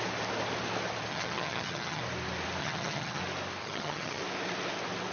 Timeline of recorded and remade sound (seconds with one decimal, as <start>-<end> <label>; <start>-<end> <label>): 0.0-1.1 recorded; 1.1-2.0 remade; 2.0-2.6 recorded; 2.6-3.2 remade; 3.2-3.6 recorded; 3.6-4.2 remade; 4.2-5.1 recorded